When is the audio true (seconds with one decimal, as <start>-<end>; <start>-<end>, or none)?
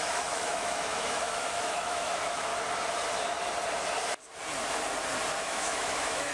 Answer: 2.5-5.4